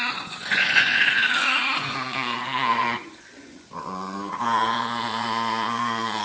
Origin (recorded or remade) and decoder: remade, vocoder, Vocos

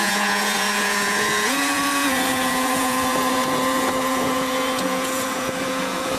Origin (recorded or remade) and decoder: remade, vocoder, Vocos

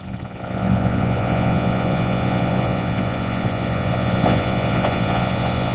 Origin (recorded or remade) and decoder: remade, vocoder, Vocos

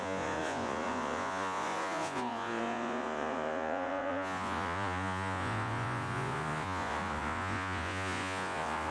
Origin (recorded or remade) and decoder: remade, vocoder, Vocos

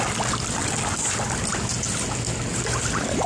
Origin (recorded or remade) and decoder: recorded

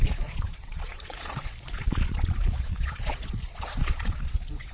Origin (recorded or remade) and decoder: remade, vocoder, Vocos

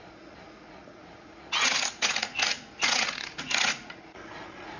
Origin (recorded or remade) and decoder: remade, vocoder, Vocos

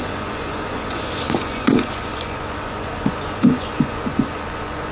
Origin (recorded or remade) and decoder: remade, vocoder, Vocos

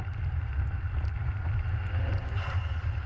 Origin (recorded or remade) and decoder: recorded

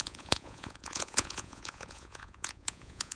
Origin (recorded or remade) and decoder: remade, vocoder, Vocos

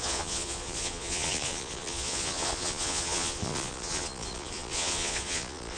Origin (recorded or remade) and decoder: remade, vocoder, Vocos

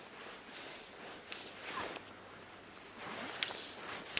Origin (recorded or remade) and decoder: recorded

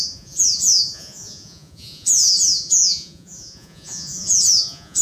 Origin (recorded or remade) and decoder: remade, vocoder, Vocos